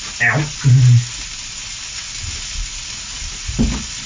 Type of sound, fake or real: real